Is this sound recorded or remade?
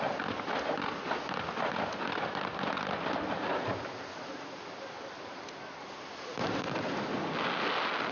recorded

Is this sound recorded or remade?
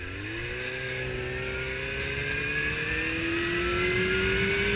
recorded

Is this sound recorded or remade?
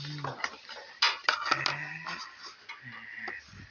recorded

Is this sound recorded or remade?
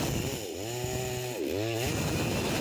recorded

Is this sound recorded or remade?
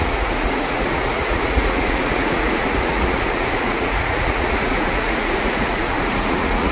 remade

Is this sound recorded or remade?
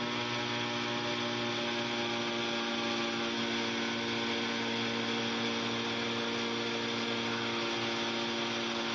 recorded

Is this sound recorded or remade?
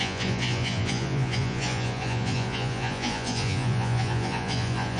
remade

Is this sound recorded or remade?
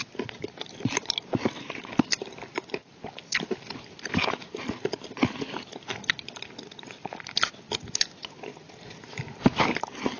recorded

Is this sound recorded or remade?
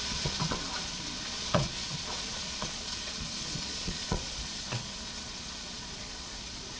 remade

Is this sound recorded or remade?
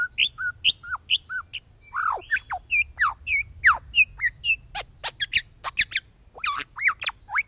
recorded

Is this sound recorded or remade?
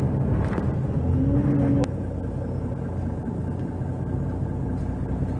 recorded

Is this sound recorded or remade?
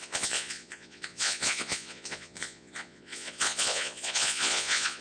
remade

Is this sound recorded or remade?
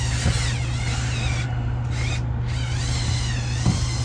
recorded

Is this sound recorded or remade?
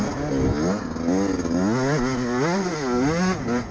recorded